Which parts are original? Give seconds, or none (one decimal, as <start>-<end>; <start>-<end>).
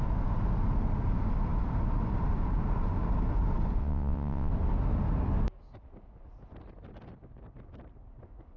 0.0-3.8; 4.5-8.6